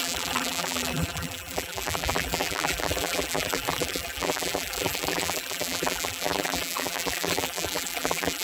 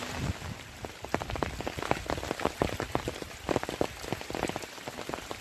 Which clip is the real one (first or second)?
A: second